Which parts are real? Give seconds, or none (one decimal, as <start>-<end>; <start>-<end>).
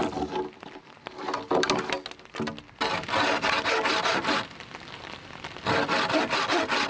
0.0-6.9